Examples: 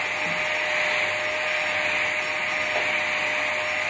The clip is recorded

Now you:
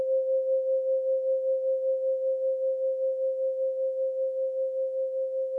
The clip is recorded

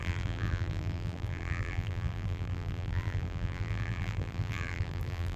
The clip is remade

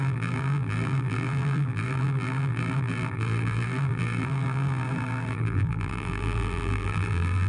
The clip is remade